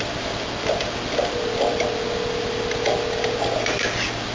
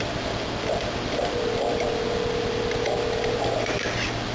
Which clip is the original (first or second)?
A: first